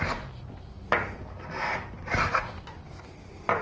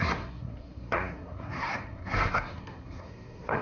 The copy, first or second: second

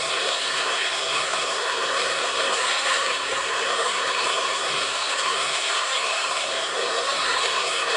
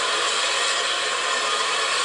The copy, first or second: first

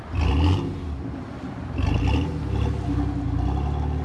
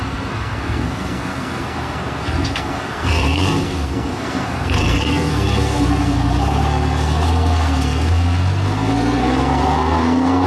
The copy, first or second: second